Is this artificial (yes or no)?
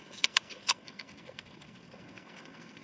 yes